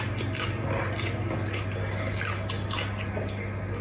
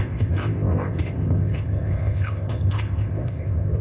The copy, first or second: second